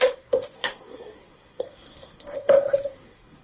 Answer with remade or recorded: remade